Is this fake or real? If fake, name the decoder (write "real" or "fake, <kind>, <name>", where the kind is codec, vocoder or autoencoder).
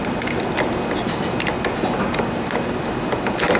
real